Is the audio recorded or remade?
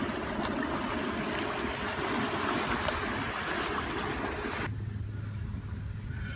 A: recorded